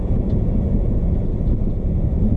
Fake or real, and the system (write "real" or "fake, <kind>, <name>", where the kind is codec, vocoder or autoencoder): fake, vocoder, Vocos